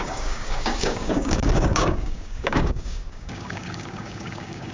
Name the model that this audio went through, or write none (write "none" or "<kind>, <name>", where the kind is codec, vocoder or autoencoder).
codec, DAC